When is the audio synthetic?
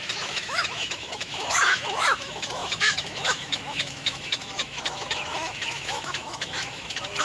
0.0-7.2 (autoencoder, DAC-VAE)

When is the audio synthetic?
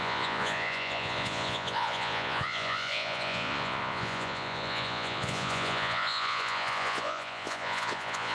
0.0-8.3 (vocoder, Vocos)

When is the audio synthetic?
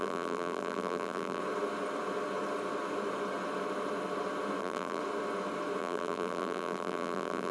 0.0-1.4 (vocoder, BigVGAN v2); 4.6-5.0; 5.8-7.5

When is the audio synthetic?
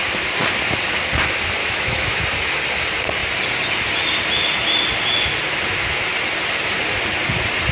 1.6-2.2 (autoencoder, DAC-VAE)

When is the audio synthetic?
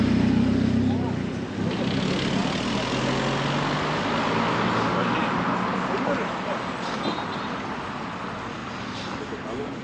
none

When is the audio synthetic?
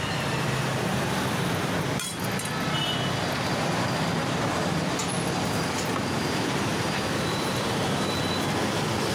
0.9-1.7 (vocoder, BigVGAN v2); 6.7-8.1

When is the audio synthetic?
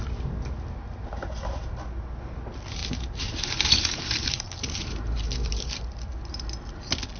2.8-5.8 (vocoder, BigVGAN v2)